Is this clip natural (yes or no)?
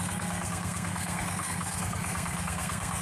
no